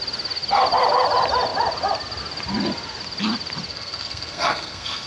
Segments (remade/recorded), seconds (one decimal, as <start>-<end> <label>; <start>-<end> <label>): 0.0-3.7 recorded; 3.7-5.1 remade